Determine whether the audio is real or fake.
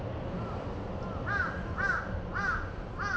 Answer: real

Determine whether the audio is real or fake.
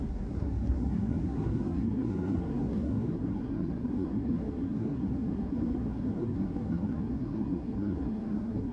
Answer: fake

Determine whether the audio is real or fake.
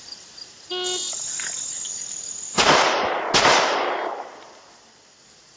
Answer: real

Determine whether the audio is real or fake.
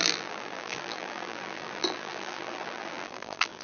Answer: fake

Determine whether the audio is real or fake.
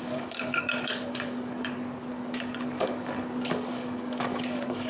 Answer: fake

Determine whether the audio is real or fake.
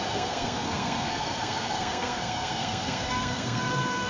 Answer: fake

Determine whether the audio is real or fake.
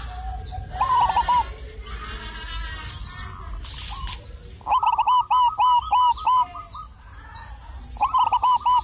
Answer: real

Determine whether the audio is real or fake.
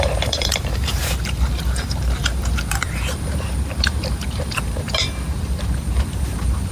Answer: fake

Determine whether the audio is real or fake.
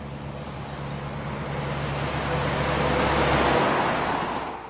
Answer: real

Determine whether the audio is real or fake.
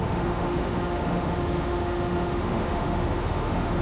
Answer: fake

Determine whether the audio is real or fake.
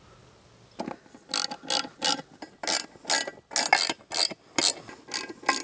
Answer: real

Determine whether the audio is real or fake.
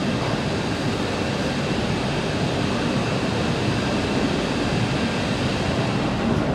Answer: real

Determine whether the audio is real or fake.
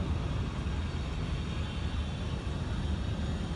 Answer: real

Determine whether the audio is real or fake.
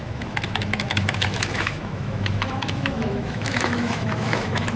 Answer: fake